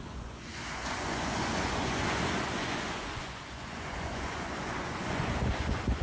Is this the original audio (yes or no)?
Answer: no